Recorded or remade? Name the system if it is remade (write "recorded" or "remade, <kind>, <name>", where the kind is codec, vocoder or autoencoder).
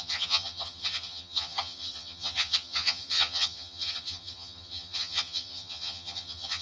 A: remade, vocoder, HiFi-GAN